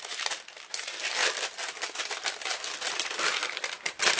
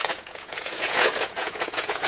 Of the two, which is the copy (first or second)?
second